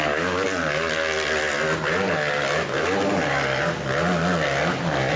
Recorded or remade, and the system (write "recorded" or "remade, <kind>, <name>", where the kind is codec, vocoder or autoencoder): recorded